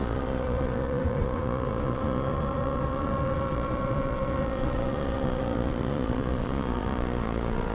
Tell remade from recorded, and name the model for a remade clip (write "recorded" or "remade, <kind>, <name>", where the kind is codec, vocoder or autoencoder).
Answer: remade, vocoder, Vocos